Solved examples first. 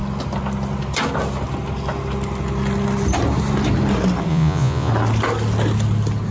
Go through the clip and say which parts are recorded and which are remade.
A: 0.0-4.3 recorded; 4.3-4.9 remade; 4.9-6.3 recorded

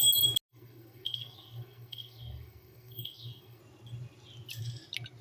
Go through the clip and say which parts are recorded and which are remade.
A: 0.0-0.5 recorded; 0.5-3.6 remade; 3.6-5.2 recorded

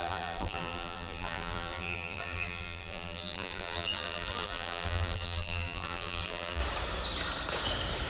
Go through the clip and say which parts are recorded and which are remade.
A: 0.0-6.6 remade; 6.6-8.1 recorded

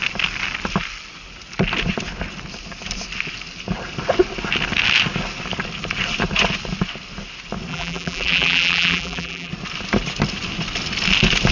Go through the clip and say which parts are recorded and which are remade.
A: 0.0-7.7 recorded; 7.7-9.5 remade; 9.5-11.5 recorded

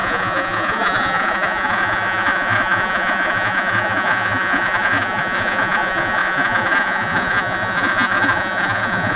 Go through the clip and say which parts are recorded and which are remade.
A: 0.0-9.2 remade

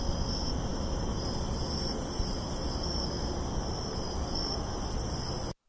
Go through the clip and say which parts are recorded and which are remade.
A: 0.0-5.7 recorded

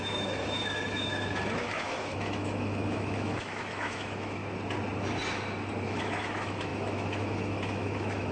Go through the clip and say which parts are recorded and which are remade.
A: 0.0-4.4 remade; 4.4-5.8 recorded; 5.8-8.3 remade